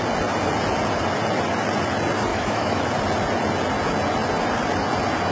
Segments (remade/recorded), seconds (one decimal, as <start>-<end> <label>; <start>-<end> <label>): 0.0-2.3 recorded; 2.3-2.9 remade; 2.9-5.3 recorded